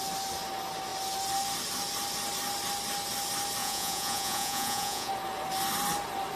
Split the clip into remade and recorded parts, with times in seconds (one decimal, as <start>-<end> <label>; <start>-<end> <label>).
0.0-3.6 recorded; 3.6-5.1 remade; 5.1-6.4 recorded